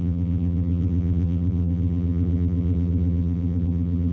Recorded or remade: remade